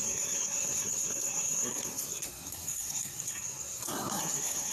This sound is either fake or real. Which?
fake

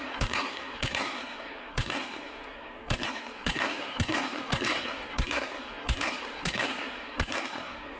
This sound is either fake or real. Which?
fake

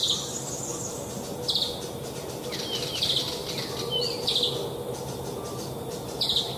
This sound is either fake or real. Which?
real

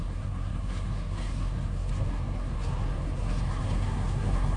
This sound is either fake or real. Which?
fake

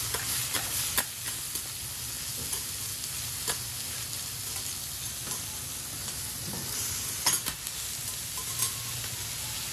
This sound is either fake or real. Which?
real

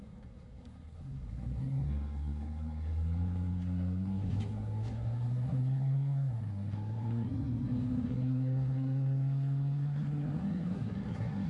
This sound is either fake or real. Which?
fake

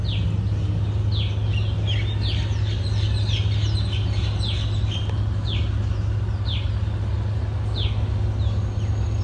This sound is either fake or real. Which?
real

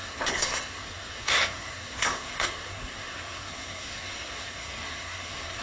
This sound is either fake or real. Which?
fake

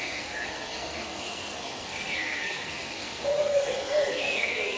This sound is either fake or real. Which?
fake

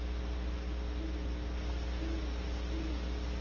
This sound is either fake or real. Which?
real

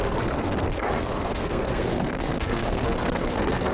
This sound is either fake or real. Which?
fake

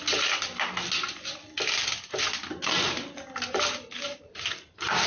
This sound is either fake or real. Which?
real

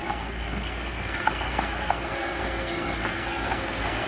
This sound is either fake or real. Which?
fake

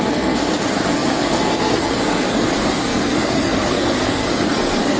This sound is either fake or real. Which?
fake